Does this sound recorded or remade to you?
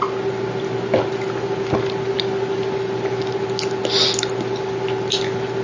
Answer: recorded